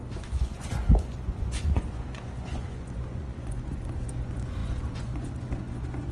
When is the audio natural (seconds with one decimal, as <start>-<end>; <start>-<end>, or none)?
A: none